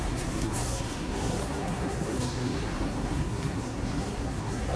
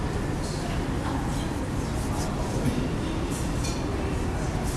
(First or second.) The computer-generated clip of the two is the first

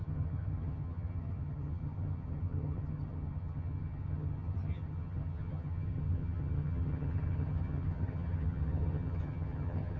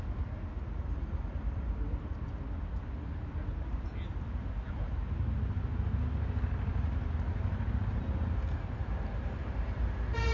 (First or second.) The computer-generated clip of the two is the first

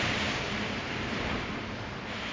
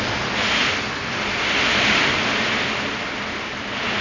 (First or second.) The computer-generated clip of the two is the first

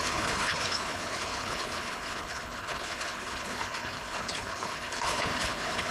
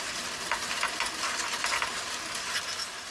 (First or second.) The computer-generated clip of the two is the first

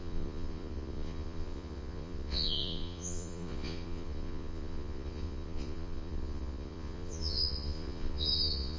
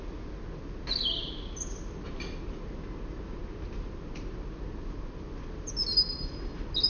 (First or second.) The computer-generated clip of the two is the first